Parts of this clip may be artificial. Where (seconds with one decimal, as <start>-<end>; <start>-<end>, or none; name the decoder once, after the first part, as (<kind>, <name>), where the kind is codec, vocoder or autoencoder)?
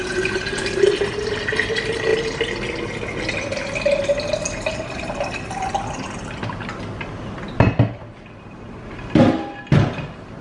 none